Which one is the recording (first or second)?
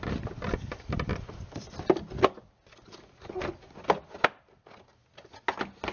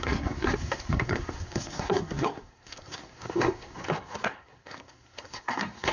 first